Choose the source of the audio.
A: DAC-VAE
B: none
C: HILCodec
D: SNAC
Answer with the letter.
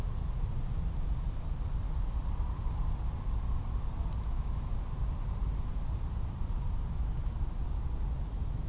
B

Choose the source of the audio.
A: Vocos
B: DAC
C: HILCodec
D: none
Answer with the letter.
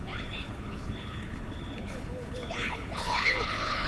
C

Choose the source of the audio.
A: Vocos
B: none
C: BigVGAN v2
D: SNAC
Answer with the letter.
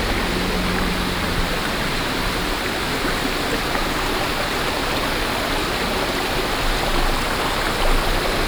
B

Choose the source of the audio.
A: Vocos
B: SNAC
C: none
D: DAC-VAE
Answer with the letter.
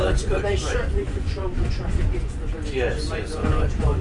A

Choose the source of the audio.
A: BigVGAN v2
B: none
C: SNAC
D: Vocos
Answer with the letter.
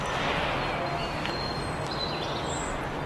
B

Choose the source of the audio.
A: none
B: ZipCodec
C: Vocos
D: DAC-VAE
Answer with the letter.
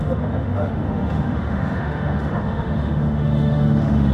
D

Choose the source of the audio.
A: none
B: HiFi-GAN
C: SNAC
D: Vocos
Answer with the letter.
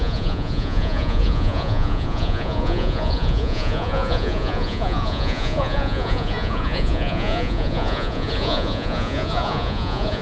D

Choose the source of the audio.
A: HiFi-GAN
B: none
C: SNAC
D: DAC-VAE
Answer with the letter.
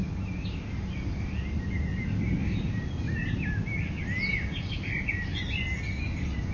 B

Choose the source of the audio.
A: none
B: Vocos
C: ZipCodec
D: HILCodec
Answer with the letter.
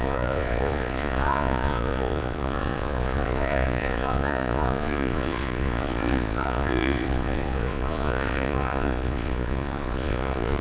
B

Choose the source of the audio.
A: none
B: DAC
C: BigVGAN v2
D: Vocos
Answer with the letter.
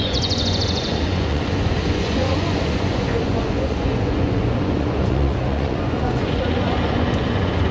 D